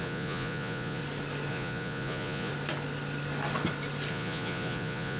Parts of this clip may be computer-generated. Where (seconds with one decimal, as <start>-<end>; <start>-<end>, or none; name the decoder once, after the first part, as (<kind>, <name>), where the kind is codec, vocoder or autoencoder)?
0.0-1.0 (vocoder, Vocos); 1.5-2.5; 4.1-5.2